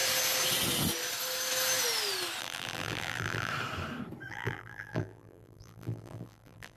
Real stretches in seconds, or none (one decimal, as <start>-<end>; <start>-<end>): 0.0-2.4; 3.5-4.3